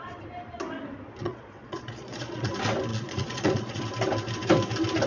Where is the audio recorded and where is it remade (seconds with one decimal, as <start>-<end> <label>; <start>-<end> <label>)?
0.0-1.2 recorded; 1.2-2.5 remade; 2.5-2.9 recorded; 2.9-3.8 remade; 3.8-5.1 recorded

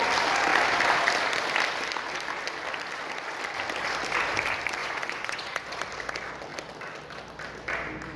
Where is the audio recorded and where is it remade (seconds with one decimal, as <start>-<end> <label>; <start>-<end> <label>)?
0.0-4.8 recorded; 4.8-5.8 remade; 5.8-8.2 recorded

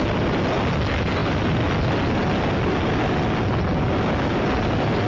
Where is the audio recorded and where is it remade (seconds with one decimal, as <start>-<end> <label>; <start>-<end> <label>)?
0.0-5.1 recorded

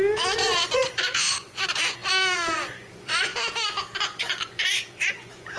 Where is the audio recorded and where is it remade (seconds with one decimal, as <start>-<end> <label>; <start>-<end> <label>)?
0.0-3.3 remade; 3.3-4.0 recorded; 4.0-5.6 remade

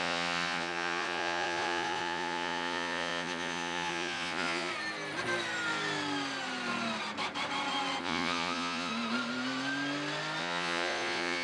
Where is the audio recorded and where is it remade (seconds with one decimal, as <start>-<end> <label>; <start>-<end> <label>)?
0.0-4.7 remade; 4.7-8.0 recorded; 8.0-8.9 remade; 8.9-10.4 recorded; 10.4-11.4 remade

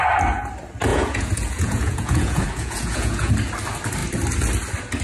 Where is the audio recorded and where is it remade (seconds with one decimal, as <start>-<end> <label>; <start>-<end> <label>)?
0.0-0.9 recorded; 0.9-3.3 remade; 3.3-5.0 recorded

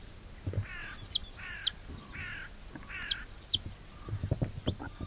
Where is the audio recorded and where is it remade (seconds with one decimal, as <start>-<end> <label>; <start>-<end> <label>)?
0.0-5.1 recorded